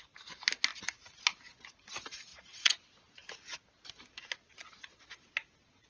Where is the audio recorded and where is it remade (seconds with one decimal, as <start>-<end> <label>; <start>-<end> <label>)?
0.0-2.3 recorded; 2.3-3.3 remade; 3.3-4.4 recorded; 4.4-5.0 remade; 5.0-5.9 recorded